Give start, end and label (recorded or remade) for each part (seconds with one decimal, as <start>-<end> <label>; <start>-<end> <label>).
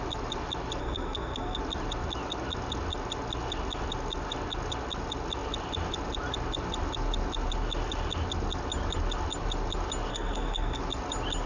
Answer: 0.0-0.8 recorded; 0.8-1.6 remade; 1.6-10.1 recorded; 10.1-10.8 remade; 10.8-11.5 recorded